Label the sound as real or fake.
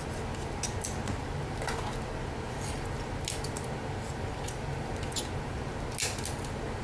real